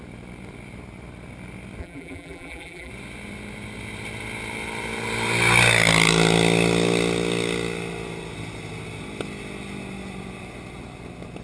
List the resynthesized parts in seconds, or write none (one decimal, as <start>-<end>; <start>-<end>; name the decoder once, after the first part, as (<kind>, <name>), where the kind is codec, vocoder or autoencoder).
1.8-2.9 (vocoder, BigVGAN v2)